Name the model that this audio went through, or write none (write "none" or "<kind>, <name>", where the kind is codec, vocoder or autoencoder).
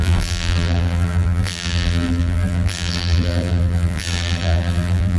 vocoder, BigVGAN v2